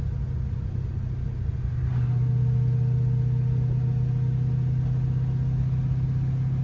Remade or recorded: recorded